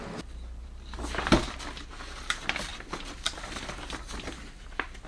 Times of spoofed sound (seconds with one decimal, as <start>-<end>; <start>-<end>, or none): 0.6-1.5; 2.7-3.4